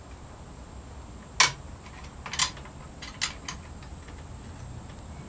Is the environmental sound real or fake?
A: real